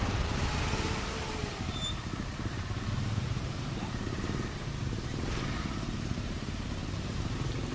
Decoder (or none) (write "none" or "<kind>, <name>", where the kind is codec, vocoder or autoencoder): vocoder, BigVGAN v2